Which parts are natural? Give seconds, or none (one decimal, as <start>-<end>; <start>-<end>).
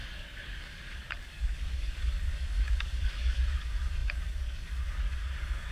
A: none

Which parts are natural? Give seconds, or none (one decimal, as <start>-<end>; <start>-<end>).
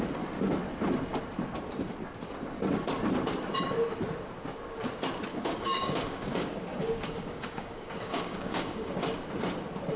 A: 0.0-5.3; 8.9-10.0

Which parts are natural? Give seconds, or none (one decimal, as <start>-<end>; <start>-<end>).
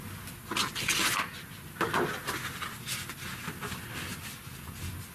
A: 0.0-5.1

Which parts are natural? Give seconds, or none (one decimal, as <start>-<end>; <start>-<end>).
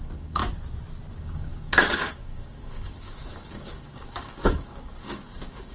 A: 0.4-1.1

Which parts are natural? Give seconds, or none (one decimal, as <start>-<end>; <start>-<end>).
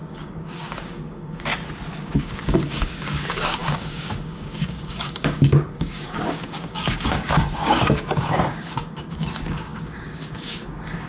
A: 1.5-2.0